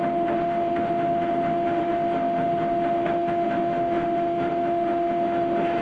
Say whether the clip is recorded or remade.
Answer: remade